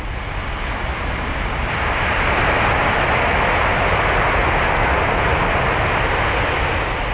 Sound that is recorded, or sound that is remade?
recorded